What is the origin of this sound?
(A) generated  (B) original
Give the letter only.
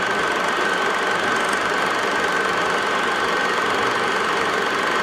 B